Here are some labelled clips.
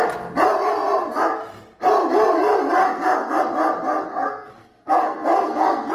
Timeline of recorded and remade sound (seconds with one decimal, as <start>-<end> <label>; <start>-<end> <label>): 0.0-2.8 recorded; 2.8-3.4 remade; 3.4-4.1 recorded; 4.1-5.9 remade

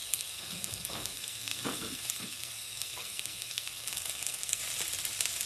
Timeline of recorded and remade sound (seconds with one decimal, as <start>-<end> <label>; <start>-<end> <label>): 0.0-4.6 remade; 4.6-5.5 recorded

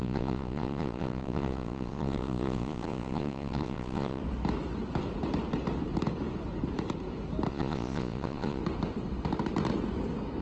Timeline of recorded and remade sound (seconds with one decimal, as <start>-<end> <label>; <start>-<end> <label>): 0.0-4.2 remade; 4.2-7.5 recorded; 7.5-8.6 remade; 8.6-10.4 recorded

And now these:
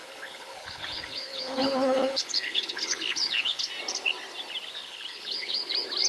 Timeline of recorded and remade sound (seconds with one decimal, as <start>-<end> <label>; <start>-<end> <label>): 0.0-3.7 remade; 3.7-4.8 recorded; 4.8-5.6 remade; 5.6-6.1 recorded